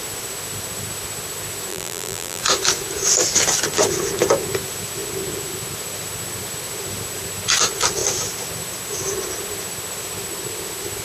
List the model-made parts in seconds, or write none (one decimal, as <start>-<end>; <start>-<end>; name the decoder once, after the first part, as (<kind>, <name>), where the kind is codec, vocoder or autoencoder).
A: 1.7-2.4 (vocoder, BigVGAN v2)